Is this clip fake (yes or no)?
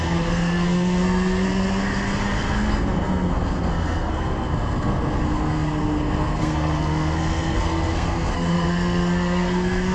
yes